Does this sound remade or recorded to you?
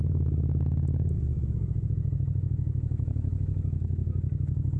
remade